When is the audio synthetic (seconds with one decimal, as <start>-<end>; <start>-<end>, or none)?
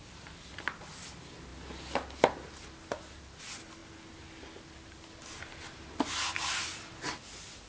none